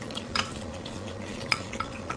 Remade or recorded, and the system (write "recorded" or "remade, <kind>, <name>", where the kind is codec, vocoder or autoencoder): remade, vocoder, Vocos